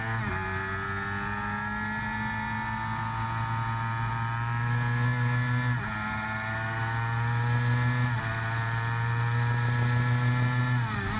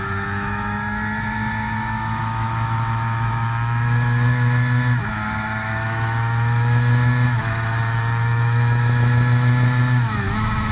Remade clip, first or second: second